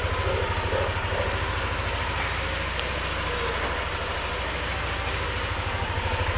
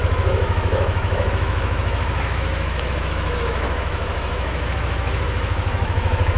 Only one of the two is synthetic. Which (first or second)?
second